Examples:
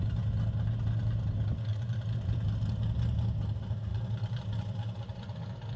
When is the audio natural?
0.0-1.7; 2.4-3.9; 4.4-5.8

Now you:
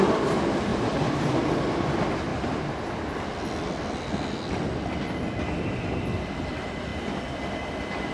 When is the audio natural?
0.0-0.7; 1.5-8.1

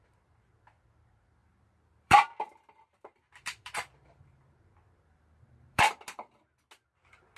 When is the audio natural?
0.0-1.4; 5.8-7.4

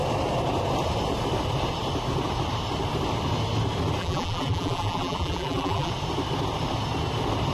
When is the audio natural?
0.0-4.0; 5.9-7.5

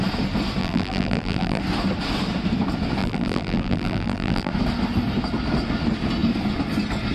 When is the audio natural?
0.0-0.6; 1.6-3.0; 4.5-7.1

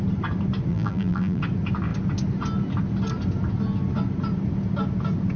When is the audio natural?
0.0-0.7; 1.4-5.4

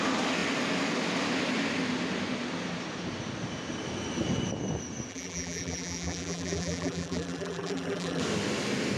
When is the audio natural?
0.0-5.1; 8.2-9.0

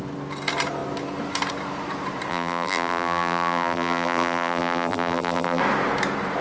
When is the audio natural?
0.0-2.3; 5.6-6.4